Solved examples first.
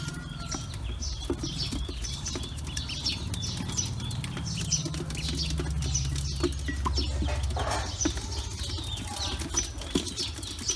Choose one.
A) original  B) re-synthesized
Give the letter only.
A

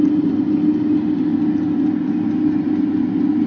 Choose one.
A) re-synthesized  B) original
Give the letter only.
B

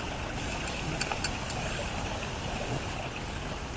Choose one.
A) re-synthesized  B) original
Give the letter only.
B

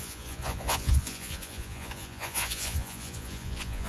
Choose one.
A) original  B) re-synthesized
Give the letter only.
B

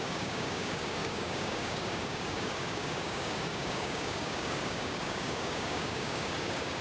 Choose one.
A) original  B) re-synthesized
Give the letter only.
B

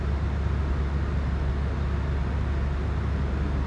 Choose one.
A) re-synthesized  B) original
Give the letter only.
B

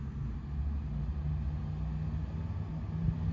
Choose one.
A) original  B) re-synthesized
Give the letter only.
A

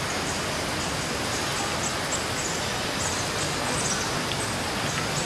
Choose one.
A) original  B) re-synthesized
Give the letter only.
A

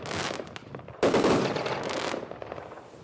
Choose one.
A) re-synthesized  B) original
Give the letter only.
B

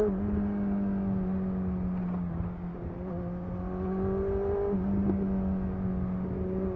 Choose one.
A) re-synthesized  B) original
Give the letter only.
B